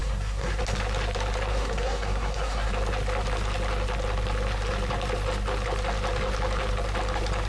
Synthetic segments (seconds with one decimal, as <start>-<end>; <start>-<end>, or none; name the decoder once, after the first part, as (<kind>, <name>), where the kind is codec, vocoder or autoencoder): 0.0-0.6 (codec, SNAC); 1.5-2.7